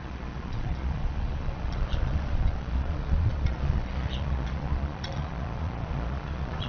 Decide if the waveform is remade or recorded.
remade